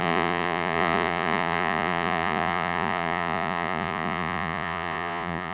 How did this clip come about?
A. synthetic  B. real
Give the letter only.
A